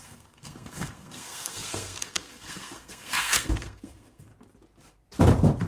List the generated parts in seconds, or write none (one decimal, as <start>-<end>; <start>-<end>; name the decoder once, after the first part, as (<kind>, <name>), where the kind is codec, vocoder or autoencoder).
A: 0.0-4.3 (codec, SNAC)